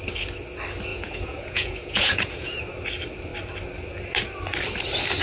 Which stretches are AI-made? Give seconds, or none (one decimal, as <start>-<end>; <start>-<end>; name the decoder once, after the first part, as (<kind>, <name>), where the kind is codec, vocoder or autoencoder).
0.9-2.6 (vocoder, Vocos)